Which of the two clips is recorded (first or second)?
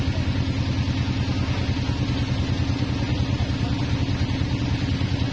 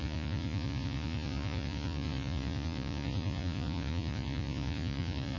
first